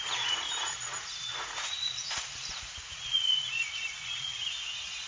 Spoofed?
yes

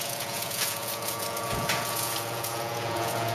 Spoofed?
yes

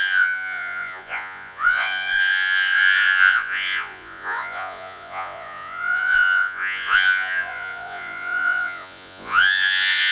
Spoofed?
yes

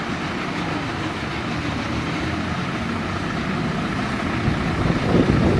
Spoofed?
no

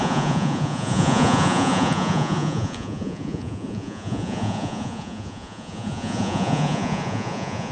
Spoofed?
yes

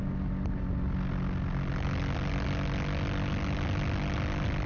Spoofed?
no